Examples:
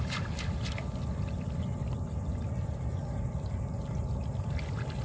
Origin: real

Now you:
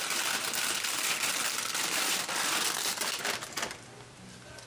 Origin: fake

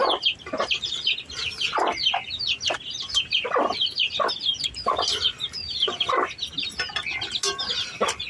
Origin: real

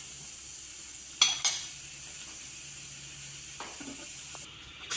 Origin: real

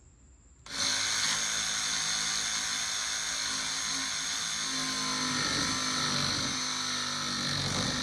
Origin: real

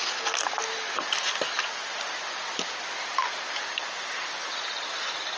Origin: real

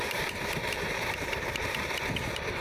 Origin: fake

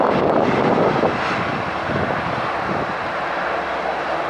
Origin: real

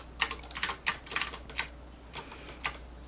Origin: real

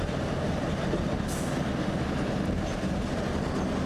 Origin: real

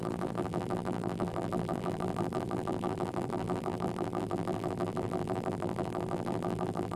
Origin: fake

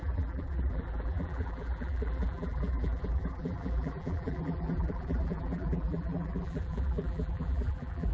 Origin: fake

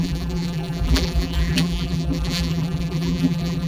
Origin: fake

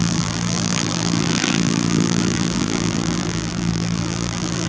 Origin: fake